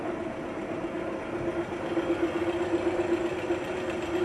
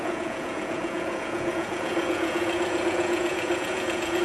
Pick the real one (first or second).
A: first